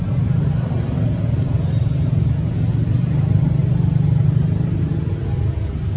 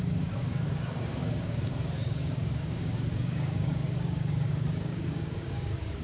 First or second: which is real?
first